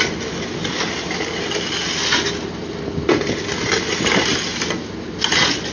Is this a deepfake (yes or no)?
no